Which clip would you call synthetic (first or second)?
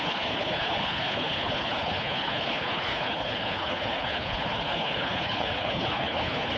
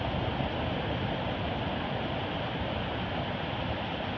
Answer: first